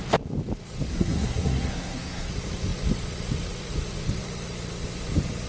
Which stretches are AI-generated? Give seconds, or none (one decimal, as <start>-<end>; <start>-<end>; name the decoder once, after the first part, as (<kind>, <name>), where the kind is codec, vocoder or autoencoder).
0.9-2.3 (codec, SNAC)